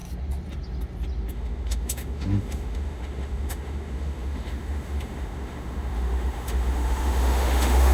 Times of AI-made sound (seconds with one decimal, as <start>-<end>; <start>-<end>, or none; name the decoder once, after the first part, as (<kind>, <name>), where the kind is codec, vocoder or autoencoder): 1.3-7.9 (autoencoder, DAC-VAE)

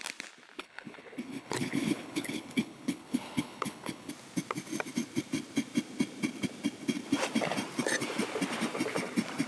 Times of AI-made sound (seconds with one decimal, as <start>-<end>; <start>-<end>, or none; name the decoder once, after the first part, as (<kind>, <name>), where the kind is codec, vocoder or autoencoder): 0.6-4.1 (codec, HILCodec)